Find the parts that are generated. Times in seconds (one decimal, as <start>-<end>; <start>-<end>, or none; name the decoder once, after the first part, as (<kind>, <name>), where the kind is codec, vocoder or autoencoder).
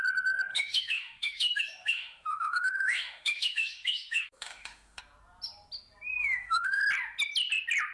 0.5-5.0 (autoencoder, DAC-VAE); 6.2-6.8